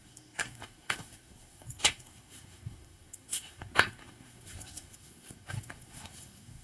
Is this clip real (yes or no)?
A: no